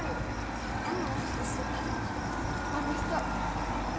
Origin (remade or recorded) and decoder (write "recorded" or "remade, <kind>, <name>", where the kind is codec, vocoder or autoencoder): recorded